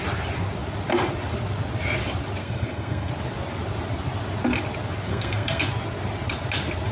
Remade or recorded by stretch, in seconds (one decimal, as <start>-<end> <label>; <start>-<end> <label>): 0.0-2.4 recorded; 2.4-3.1 remade; 3.1-5.1 recorded; 5.1-5.6 remade; 5.6-6.9 recorded